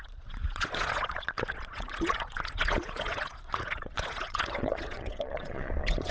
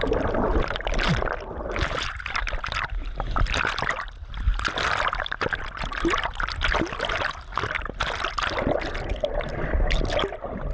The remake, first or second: first